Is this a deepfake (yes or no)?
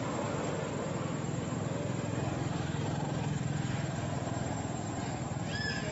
no